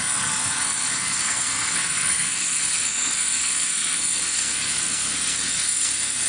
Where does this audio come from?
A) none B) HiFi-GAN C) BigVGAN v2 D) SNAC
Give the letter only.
D